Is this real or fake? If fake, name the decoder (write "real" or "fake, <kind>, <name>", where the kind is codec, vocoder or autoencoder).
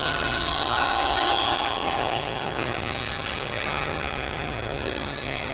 fake, vocoder, HiFi-GAN